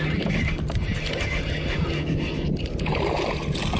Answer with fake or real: real